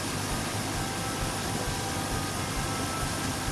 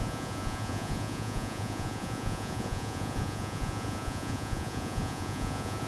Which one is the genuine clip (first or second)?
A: first